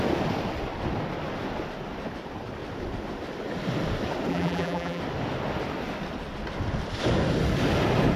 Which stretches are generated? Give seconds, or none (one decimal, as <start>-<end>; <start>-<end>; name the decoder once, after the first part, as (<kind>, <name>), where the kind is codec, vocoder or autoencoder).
4.3-5.0 (vocoder, BigVGAN v2)